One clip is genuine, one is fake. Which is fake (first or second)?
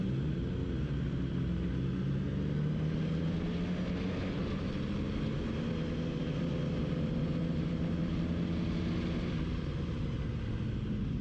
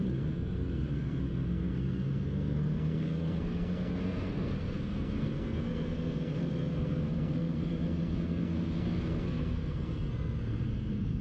second